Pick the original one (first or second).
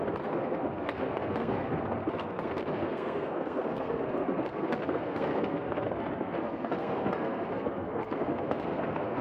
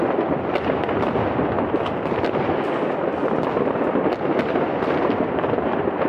second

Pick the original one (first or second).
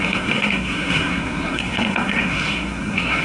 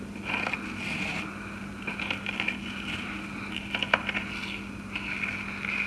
second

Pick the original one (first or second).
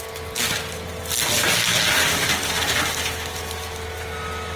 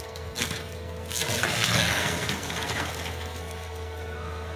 first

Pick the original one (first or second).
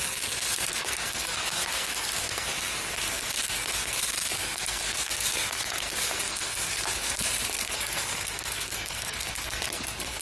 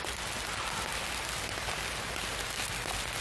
second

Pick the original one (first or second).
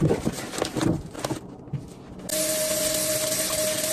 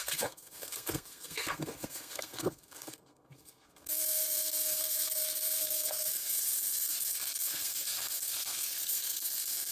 first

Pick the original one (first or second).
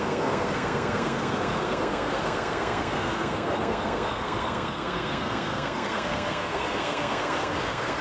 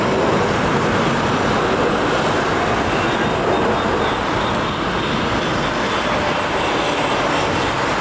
second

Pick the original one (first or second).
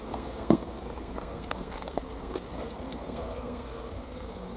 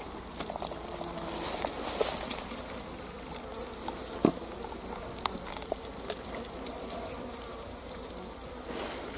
second